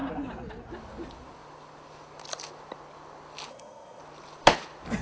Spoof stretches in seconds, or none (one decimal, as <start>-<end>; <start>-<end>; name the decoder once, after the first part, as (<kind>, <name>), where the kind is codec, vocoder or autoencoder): 3.5-4.0 (codec, SNAC)